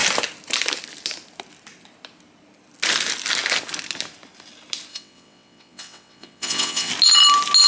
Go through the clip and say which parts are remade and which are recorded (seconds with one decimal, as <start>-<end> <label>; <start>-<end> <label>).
0.0-4.9 recorded; 4.9-6.9 remade; 6.9-7.7 recorded